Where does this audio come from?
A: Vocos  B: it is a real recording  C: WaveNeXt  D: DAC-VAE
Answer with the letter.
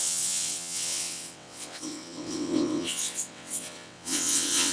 C